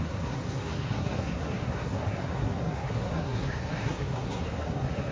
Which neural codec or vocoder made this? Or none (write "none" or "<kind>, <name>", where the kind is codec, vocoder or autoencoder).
codec, SNAC